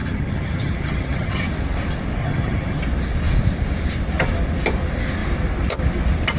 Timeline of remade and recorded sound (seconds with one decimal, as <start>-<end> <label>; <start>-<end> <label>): 0.0-1.5 remade; 1.5-2.2 recorded; 2.2-2.8 remade; 2.8-6.4 recorded